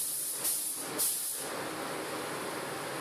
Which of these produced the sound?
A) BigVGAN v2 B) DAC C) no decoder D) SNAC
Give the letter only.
C